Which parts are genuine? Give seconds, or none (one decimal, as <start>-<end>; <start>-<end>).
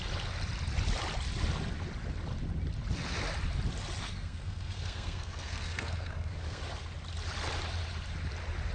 0.0-4.0; 6.6-8.7